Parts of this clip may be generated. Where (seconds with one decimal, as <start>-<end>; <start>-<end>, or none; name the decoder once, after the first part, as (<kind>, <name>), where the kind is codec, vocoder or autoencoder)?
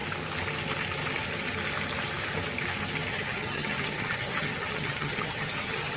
3.1-6.0 (vocoder, HiFi-GAN)